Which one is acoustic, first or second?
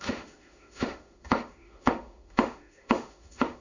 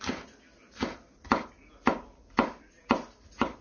second